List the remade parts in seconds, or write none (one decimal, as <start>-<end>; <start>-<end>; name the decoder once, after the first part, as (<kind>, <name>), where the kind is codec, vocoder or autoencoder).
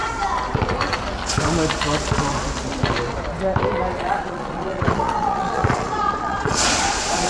4.0-7.3 (vocoder, Vocos)